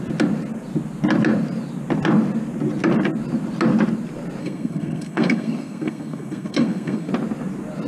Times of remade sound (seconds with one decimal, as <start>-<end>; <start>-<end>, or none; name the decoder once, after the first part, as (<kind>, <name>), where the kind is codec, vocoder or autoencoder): 4.4-7.1 (codec, SNAC)

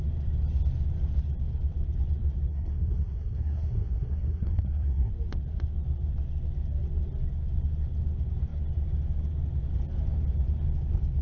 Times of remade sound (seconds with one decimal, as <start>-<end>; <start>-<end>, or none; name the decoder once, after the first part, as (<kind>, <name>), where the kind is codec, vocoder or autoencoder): 2.5-5.1 (codec, SNAC)

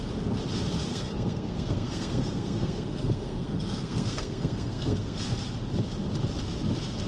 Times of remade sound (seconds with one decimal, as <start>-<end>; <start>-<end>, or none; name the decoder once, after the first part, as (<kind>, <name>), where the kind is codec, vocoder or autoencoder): 0.9-5.2 (codec, SNAC)

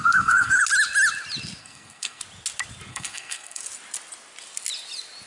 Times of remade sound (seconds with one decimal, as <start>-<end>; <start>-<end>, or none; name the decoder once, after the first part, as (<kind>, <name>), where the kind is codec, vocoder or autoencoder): 0.0-0.6 (codec, SNAC); 1.6-2.2; 2.9-3.6

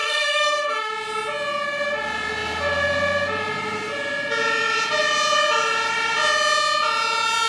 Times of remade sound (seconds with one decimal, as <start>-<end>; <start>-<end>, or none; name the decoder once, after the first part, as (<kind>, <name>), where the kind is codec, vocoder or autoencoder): 0.0-0.9 (codec, SNAC)

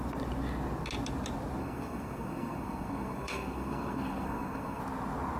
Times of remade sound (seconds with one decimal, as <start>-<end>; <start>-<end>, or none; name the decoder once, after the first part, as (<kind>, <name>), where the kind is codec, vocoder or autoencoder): 1.6-4.8 (codec, SNAC)

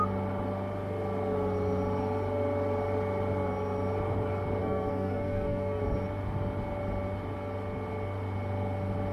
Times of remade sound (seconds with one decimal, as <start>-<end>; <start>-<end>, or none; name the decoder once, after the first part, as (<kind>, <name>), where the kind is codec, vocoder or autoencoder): 4.6-5.8 (codec, SNAC)

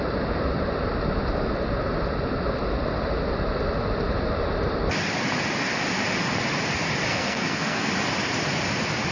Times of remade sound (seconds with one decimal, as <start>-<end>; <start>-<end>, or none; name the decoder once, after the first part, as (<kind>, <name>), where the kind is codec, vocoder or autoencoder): 7.1-7.9 (codec, SNAC)